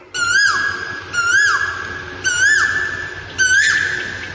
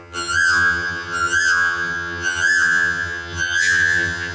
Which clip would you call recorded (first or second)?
first